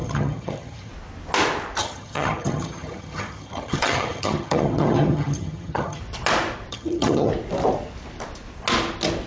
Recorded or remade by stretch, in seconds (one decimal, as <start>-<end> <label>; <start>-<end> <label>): 0.0-0.9 remade; 0.9-1.8 recorded; 1.8-6.0 remade; 6.0-6.7 recorded; 6.7-7.3 remade; 7.3-9.3 recorded